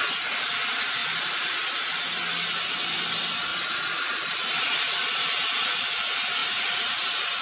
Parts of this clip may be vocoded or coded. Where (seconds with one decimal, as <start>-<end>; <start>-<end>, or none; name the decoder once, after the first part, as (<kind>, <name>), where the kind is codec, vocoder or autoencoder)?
1.0-2.1 (vocoder, BigVGAN v2); 3.5-5.8; 6.4-7.4